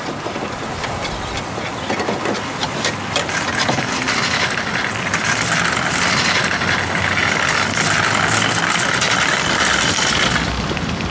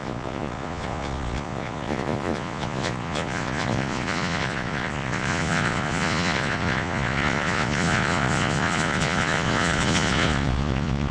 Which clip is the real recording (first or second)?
first